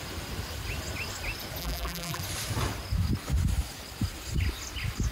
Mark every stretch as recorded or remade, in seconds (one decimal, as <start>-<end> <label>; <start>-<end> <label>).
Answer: 0.0-1.6 recorded; 1.6-2.2 remade; 2.2-5.1 recorded